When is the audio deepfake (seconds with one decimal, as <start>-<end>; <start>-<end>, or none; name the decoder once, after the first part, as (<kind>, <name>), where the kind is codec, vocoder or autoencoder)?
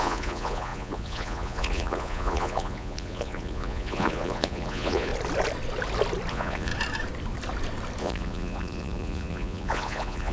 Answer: 0.0-5.1 (vocoder, Vocos); 6.3-6.7; 8.0-10.3